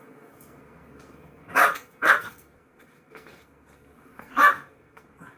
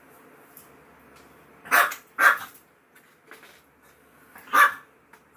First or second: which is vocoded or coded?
first